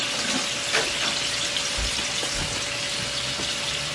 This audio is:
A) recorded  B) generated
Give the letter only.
A